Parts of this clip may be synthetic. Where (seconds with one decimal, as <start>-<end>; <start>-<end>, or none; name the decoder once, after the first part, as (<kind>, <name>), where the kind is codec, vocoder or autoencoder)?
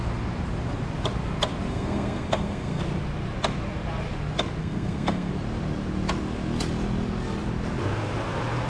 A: 1.7-2.8 (codec, SNAC); 4.6-5.3